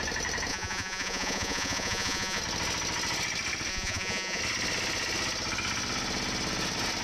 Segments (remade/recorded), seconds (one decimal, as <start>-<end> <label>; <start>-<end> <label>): 0.0-0.5 recorded; 0.5-2.4 remade; 2.4-3.7 recorded; 3.7-4.4 remade; 4.4-7.0 recorded

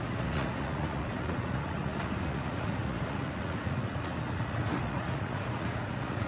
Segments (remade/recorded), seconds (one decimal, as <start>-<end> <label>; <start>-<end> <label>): 0.0-6.3 remade